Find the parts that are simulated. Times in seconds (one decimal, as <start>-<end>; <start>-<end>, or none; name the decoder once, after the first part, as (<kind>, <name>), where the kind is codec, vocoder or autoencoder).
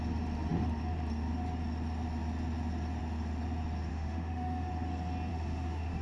3.9-4.7 (autoencoder, DAC-VAE); 5.3-6.0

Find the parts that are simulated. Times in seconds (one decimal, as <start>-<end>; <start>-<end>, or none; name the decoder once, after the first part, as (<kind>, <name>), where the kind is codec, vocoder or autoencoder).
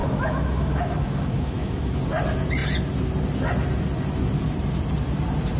0.0-2.0 (autoencoder, DAC-VAE)